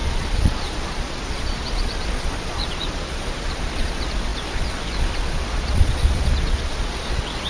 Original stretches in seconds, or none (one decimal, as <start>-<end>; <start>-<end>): none